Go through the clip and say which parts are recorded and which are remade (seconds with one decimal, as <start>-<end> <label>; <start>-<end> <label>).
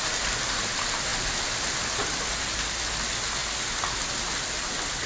0.0-5.1 recorded